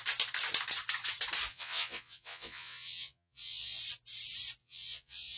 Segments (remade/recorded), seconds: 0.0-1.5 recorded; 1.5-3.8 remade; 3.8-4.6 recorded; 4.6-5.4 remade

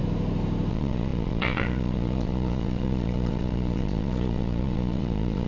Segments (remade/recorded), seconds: 0.0-0.7 recorded; 0.7-5.5 remade

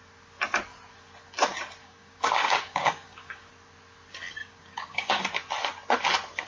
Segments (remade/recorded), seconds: 0.0-1.8 recorded; 1.8-3.5 remade; 3.5-4.4 recorded; 4.4-5.2 remade; 5.2-6.5 recorded

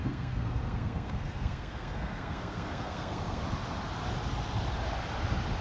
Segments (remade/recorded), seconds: 0.0-3.4 remade; 3.4-5.6 recorded

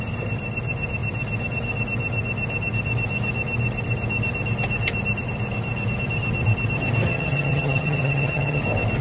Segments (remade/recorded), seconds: 0.0-7.1 recorded; 7.1-8.6 remade; 8.6-9.0 recorded

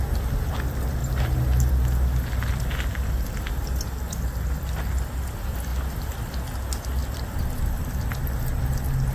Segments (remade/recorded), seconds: 0.0-5.7 recorded; 5.7-6.3 remade; 6.3-7.0 recorded; 7.0-8.2 remade; 8.2-9.1 recorded